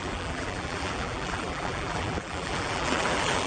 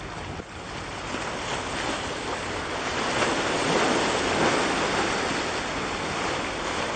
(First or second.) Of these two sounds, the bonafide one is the second